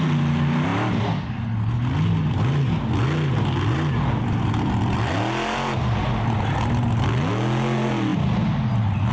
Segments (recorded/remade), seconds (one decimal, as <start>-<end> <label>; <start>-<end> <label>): 0.0-9.1 recorded